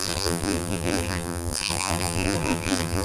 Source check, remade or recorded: remade